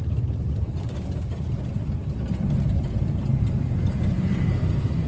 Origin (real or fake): fake